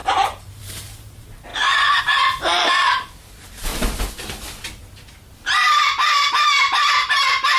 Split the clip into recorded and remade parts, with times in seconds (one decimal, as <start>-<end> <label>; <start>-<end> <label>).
0.0-3.7 remade; 3.7-5.3 recorded; 5.3-7.6 remade